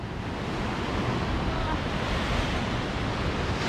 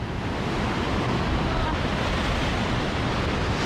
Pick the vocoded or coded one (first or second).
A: second